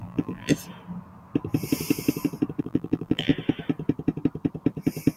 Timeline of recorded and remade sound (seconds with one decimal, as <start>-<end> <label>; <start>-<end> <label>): 0.0-0.5 remade; 0.5-2.6 recorded; 2.6-3.3 remade; 3.3-5.2 recorded